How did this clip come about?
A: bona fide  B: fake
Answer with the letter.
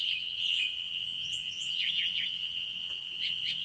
B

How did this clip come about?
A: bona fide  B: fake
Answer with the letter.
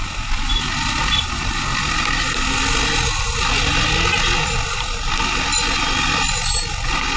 A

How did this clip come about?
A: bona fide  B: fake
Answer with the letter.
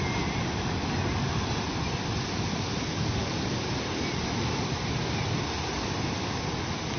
A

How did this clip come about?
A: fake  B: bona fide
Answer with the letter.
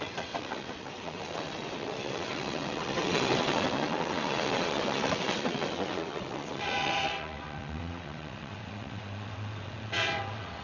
A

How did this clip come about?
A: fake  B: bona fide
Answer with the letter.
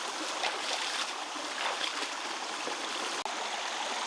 B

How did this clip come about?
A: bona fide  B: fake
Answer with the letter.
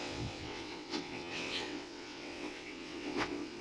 B